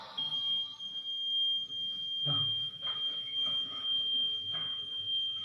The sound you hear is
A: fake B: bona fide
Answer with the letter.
A